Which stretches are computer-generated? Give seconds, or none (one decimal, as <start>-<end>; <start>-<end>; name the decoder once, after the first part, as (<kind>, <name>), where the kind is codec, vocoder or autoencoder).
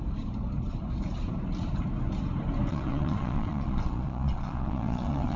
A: 2.7-5.4 (vocoder, Vocos)